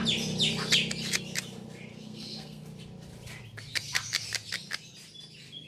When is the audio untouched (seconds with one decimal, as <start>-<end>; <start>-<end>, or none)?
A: 0.0-1.9; 2.7-5.7